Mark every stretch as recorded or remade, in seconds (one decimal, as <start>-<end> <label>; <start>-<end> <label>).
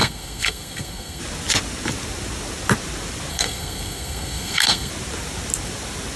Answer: 0.0-1.2 remade; 1.2-3.3 recorded; 3.3-4.9 remade; 4.9-6.2 recorded